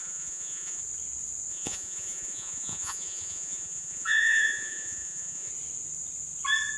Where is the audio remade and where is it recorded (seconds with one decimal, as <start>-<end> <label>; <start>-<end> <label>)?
0.0-0.8 remade; 0.8-1.5 recorded; 1.5-5.5 remade; 5.5-6.8 recorded